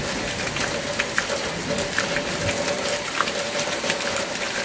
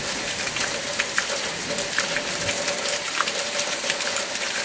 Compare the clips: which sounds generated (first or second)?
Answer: second